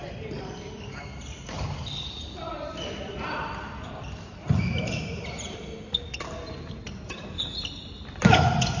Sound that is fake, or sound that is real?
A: real